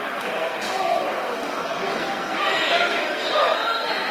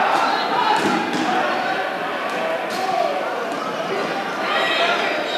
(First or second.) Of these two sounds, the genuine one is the second